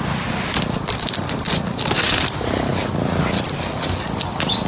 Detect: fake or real real